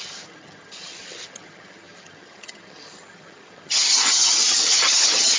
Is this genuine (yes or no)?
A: no